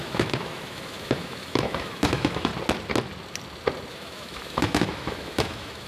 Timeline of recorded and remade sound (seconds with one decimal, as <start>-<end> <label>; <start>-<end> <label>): 0.0-2.5 remade; 2.5-3.9 recorded; 3.9-5.9 remade